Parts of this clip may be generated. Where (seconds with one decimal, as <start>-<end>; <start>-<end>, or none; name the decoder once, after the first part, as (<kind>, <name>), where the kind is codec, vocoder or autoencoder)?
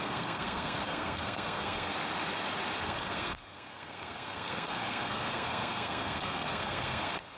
0.0-1.9 (codec, SNAC); 2.8-7.4